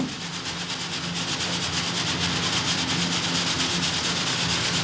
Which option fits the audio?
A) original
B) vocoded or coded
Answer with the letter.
A